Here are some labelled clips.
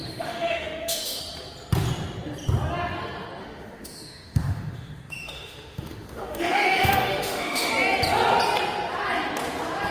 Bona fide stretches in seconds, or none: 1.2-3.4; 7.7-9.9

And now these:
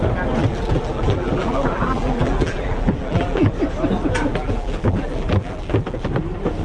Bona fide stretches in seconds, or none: 0.0-0.4; 3.5-4.3; 6.1-6.6

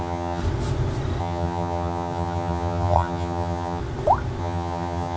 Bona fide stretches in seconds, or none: 0.4-1.2; 3.8-4.4

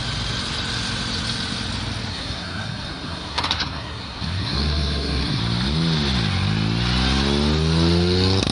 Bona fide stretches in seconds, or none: 0.0-2.1; 5.4-8.5

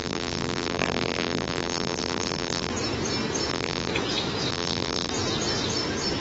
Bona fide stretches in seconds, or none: 2.7-3.5; 3.9-4.5; 5.1-6.2